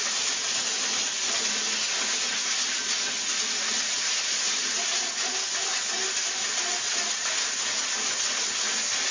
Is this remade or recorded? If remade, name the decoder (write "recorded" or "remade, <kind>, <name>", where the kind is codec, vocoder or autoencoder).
recorded